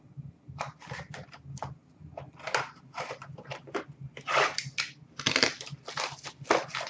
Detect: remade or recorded recorded